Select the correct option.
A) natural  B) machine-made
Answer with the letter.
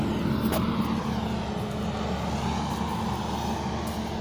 A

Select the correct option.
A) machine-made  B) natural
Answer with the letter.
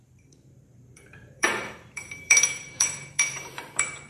A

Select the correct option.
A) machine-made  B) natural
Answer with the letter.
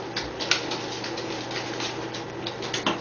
B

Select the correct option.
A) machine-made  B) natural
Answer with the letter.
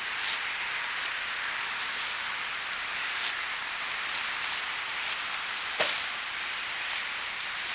A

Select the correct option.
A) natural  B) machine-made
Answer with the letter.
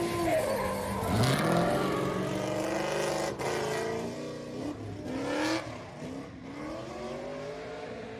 A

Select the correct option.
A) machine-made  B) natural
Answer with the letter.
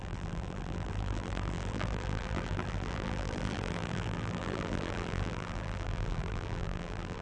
A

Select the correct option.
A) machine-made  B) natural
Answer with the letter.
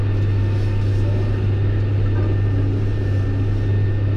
B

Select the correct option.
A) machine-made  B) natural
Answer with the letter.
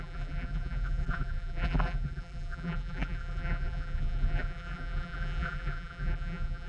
A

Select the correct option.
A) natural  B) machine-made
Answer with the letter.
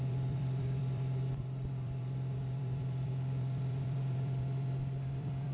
B